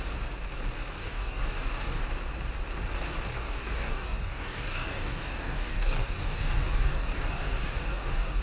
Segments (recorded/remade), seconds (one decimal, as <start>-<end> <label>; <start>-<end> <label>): 0.0-1.0 recorded; 1.0-2.0 remade; 2.0-3.3 recorded; 3.3-8.4 remade